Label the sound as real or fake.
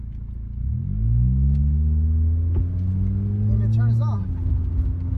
real